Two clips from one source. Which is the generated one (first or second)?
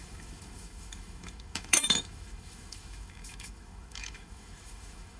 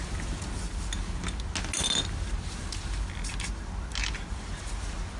first